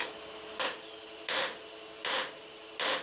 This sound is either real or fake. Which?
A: real